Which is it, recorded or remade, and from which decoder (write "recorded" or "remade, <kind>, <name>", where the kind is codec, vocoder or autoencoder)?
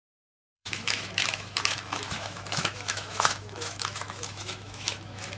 remade, autoencoder, DAC-VAE